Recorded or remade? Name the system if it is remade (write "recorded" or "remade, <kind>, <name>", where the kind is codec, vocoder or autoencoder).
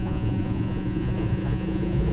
remade, vocoder, Vocos